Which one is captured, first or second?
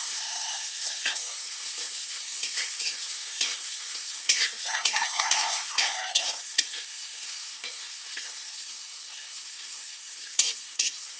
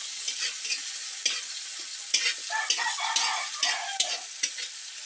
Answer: second